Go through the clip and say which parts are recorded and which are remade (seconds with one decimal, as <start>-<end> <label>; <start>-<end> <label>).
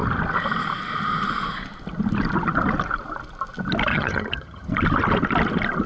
0.0-3.9 recorded; 3.9-4.7 remade; 4.7-5.9 recorded